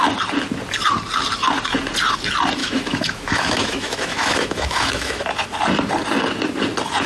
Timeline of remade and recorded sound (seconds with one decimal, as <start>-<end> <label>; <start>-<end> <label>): 0.0-2.6 recorded; 2.6-5.2 remade; 5.2-7.1 recorded

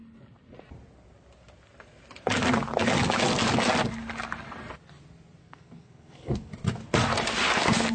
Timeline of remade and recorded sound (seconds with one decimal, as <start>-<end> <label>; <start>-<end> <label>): 0.0-5.4 recorded; 5.4-6.5 remade; 6.5-7.9 recorded

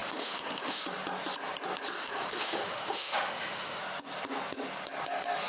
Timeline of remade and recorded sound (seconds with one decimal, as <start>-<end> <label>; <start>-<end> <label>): 0.0-0.8 remade; 0.8-2.0 recorded; 2.0-3.8 remade; 3.8-5.5 recorded

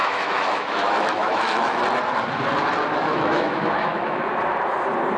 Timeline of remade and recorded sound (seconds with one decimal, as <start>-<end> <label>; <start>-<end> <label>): 0.0-1.8 remade; 1.8-3.0 recorded; 3.0-4.3 remade; 4.3-5.2 recorded

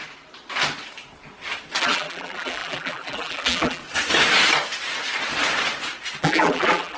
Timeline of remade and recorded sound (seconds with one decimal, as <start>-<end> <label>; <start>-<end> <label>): 0.0-1.8 recorded; 1.8-3.8 remade; 3.8-6.2 recorded; 6.2-7.0 remade

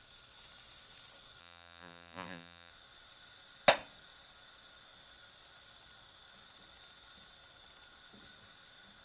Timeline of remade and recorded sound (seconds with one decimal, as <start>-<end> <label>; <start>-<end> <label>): 0.0-1.4 recorded; 1.4-2.7 remade; 2.7-9.0 recorded